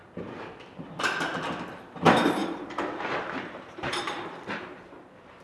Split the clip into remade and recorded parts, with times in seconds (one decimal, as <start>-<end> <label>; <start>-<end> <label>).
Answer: 0.0-0.5 remade; 0.5-2.4 recorded; 2.4-5.0 remade; 5.0-5.4 recorded